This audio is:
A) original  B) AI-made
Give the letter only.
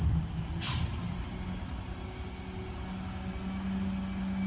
A